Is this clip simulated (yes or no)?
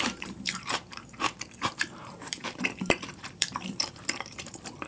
yes